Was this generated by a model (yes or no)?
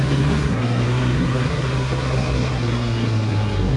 yes